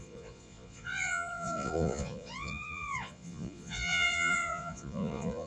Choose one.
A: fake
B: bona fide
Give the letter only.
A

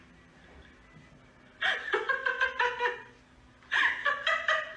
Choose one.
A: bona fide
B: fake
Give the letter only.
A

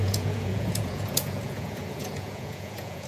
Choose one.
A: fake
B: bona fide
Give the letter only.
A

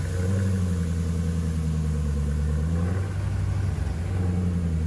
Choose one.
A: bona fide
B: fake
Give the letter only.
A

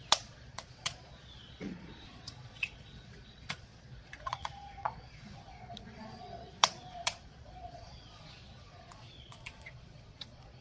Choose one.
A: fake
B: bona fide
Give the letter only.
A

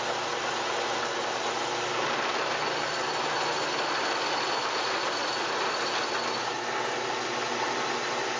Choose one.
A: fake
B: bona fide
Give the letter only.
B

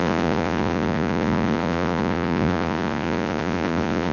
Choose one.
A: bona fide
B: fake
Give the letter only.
B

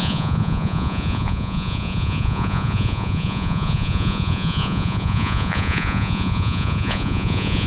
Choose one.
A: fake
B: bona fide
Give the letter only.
A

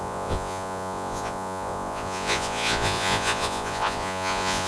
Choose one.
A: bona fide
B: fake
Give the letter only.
B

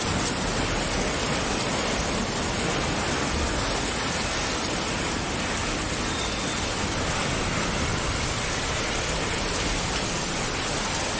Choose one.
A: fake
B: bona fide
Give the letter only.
B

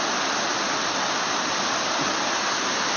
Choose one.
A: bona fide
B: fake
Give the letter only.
A